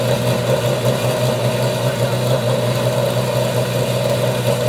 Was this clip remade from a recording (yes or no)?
no